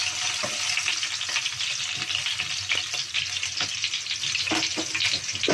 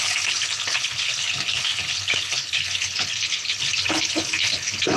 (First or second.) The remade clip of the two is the second